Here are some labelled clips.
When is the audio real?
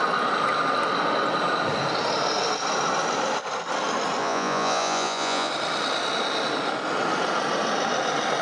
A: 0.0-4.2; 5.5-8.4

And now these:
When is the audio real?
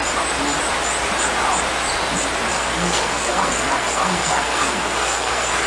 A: 0.0-2.5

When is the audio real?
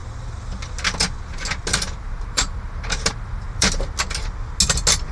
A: 0.0-1.7; 3.9-5.1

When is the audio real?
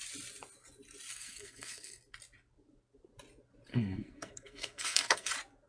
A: 0.0-1.1; 2.0-3.7; 5.3-5.7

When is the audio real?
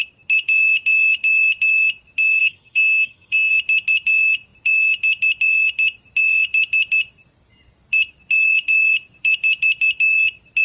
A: 0.0-2.4; 3.5-10.6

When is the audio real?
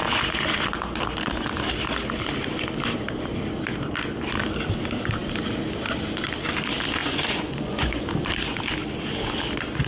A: 0.0-7.0; 8.1-9.9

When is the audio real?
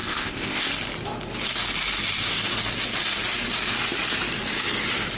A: 0.7-5.2